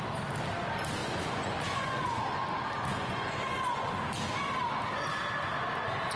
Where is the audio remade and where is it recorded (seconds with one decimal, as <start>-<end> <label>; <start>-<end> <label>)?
0.0-1.0 recorded; 1.0-2.2 remade; 2.2-2.9 recorded; 2.9-4.1 remade; 4.1-6.2 recorded

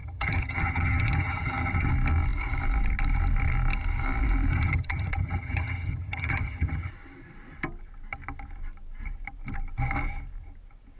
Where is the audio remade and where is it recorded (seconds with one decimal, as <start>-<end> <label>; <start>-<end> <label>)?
0.0-1.9 remade; 1.9-4.5 recorded; 4.5-6.9 remade; 6.9-11.0 recorded

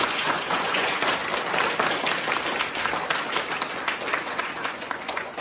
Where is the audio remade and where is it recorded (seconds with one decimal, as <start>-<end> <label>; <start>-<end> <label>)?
0.0-1.1 remade; 1.1-4.3 recorded; 4.3-5.4 remade

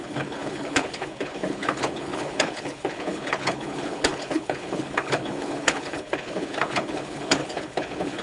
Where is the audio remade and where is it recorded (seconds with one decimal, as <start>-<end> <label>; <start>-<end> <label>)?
0.0-8.2 remade

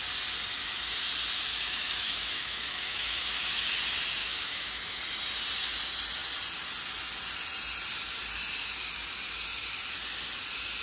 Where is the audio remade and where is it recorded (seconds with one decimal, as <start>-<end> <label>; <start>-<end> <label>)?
0.0-1.5 recorded; 1.5-3.7 remade; 3.7-4.2 recorded; 4.2-5.0 remade; 5.0-10.8 recorded

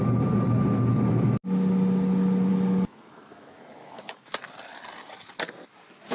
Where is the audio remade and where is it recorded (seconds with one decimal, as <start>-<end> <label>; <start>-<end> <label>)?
0.0-2.5 recorded; 2.5-4.3 remade; 4.3-6.1 recorded